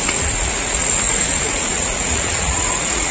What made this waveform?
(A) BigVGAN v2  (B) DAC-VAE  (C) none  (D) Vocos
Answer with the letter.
D